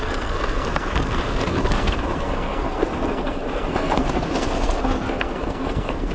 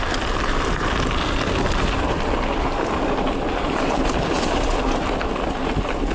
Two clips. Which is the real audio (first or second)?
second